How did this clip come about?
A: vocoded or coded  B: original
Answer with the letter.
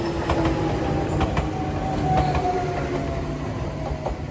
B